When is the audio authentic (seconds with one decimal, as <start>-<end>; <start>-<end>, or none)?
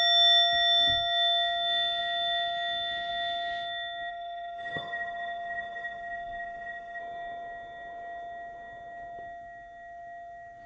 0.0-4.1; 7.0-10.7